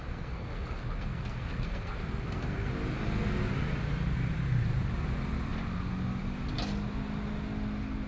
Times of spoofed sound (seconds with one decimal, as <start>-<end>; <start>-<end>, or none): 0.0-2.7